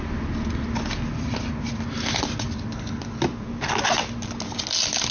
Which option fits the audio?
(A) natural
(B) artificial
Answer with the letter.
A